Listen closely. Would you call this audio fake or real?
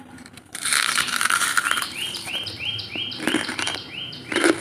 fake